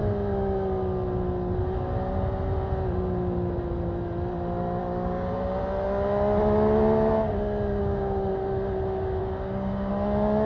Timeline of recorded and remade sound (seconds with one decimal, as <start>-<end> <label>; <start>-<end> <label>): 0.0-4.8 recorded; 4.8-5.3 remade; 5.3-7.8 recorded; 7.8-8.3 remade; 8.3-9.2 recorded; 9.2-9.9 remade; 9.9-10.5 recorded